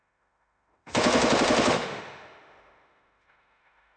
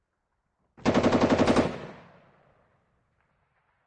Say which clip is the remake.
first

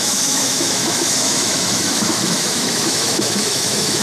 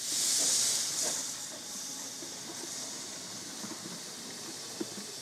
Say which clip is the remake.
first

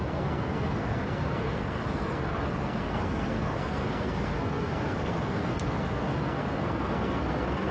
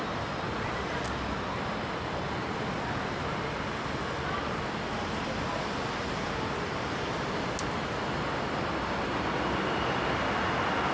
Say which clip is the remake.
first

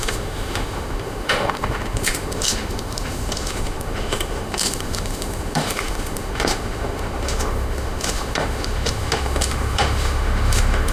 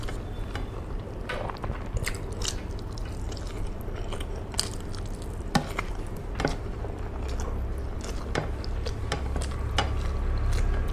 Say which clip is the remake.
first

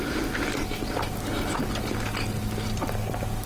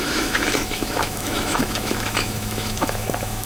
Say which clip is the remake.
second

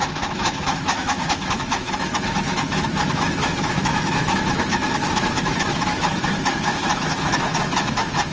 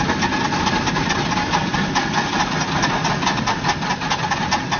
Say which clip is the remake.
first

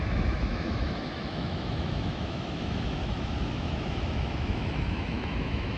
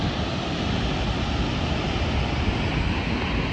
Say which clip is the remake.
first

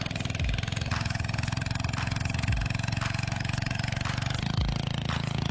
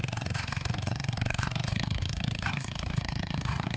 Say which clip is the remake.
second